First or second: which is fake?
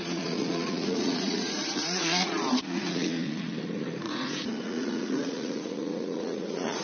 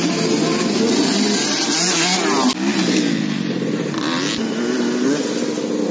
first